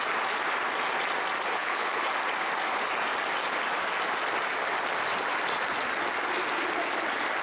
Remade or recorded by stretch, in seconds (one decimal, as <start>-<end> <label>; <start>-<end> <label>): 0.0-1.6 recorded; 1.6-2.1 remade; 2.1-7.4 recorded